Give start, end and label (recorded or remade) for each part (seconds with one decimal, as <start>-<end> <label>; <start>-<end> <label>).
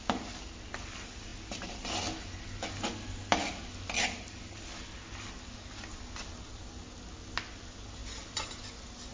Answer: 0.0-9.1 recorded